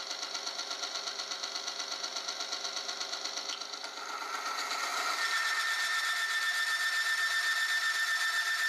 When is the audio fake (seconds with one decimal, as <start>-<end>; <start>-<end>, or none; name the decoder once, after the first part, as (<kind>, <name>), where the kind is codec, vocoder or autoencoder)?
none